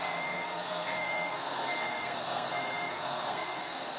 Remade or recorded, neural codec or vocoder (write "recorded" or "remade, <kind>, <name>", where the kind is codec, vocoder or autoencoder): remade, codec, SNAC